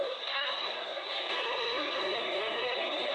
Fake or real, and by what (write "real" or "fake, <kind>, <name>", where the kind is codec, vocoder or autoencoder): fake, codec, SNAC